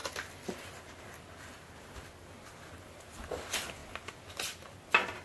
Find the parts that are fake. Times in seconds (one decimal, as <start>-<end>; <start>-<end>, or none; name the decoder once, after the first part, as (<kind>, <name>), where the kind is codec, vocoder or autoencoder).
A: none